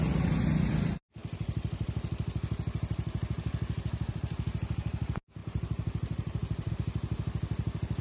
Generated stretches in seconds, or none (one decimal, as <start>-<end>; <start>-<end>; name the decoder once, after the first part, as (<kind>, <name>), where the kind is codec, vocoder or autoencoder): 5.4-6.7 (vocoder, BigVGAN v2)